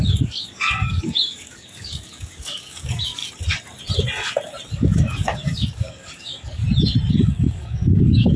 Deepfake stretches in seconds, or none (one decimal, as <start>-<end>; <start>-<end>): 0.0-3.2; 4.7-6.6; 7.1-8.4